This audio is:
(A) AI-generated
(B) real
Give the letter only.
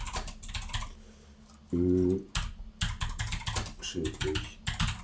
B